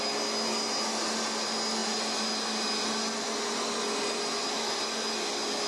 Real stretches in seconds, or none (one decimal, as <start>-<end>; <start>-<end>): 0.0-5.7